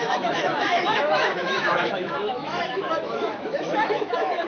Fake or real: fake